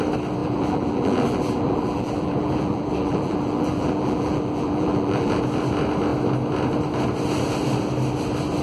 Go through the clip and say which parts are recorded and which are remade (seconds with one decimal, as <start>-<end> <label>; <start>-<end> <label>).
0.0-0.4 recorded; 0.4-5.4 remade; 5.4-8.6 recorded